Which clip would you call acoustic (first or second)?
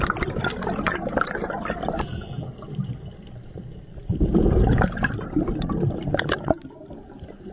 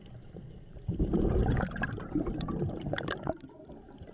first